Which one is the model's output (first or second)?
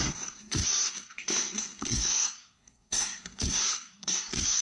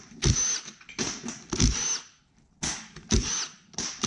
first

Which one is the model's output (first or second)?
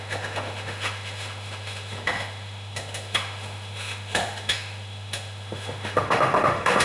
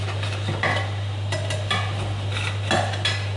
first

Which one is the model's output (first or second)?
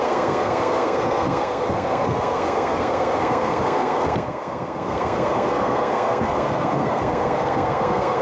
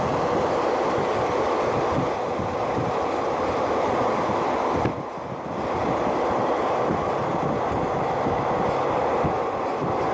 first